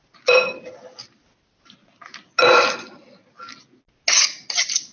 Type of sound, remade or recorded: recorded